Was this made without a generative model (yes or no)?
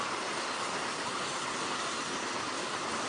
yes